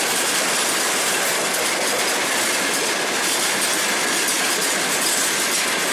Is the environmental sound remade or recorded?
recorded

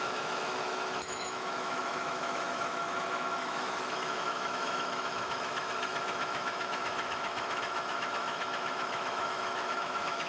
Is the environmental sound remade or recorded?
remade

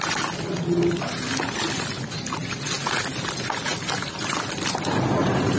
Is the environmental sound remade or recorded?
recorded